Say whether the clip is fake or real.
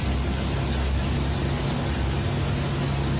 real